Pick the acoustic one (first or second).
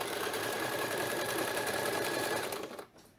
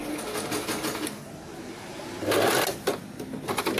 second